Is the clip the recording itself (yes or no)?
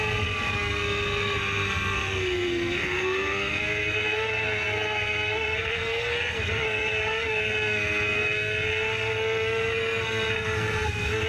no